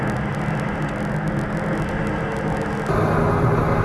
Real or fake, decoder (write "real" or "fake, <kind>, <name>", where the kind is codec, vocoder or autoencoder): real